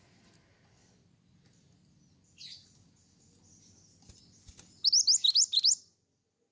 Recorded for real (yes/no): yes